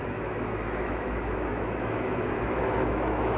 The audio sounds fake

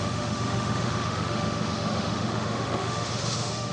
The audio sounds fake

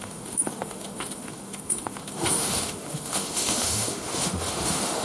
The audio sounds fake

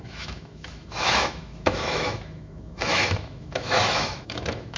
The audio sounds fake